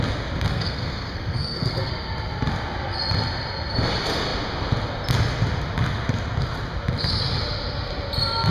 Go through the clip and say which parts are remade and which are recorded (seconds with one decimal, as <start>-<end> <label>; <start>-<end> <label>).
0.0-0.5 recorded; 0.5-1.9 remade; 1.9-8.5 recorded